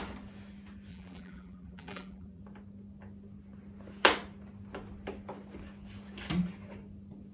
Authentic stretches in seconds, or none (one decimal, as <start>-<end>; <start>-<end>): 0.0-0.9; 2.4-7.3